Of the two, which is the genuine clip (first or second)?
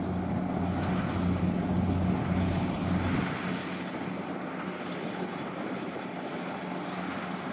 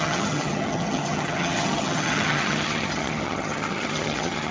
first